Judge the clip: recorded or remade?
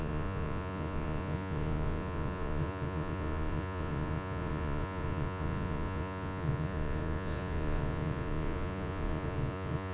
remade